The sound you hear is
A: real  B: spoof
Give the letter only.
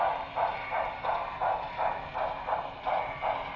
A